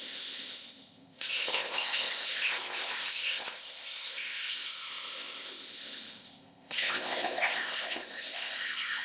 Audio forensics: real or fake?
fake